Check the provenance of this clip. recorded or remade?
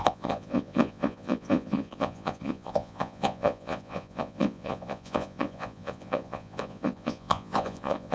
remade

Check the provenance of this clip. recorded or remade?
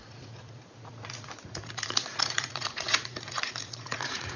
remade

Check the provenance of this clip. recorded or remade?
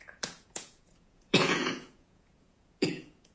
remade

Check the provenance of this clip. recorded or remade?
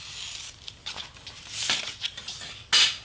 recorded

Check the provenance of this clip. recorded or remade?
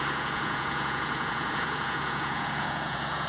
remade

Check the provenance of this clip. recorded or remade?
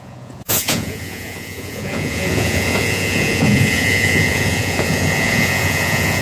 remade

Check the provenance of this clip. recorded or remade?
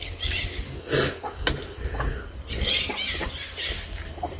recorded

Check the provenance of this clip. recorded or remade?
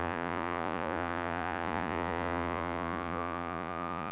remade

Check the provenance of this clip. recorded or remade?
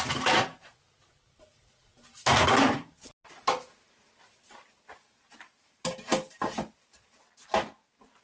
recorded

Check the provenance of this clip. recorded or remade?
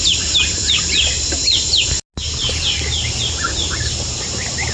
recorded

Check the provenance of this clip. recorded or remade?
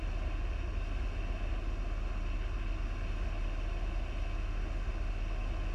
recorded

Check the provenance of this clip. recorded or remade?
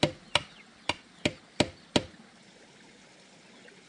recorded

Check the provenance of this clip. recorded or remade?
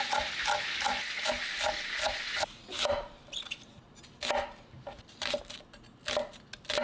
recorded